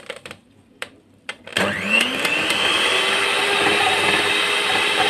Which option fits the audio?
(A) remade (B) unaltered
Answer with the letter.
A